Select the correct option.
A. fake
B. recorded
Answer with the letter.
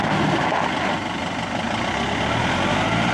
B